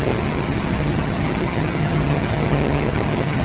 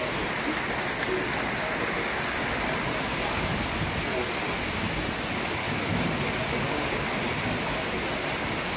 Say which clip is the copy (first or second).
first